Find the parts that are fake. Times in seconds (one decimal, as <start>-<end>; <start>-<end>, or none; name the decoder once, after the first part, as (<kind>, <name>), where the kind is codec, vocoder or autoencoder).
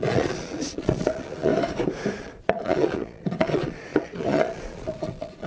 0.0-1.5 (vocoder, Vocos); 2.2-5.5